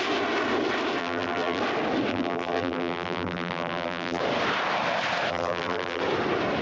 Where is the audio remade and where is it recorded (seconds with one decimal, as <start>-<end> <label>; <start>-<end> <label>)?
0.0-1.0 recorded; 1.0-1.6 remade; 1.6-2.1 recorded; 2.1-4.2 remade; 4.2-5.3 recorded; 5.3-6.0 remade; 6.0-6.6 recorded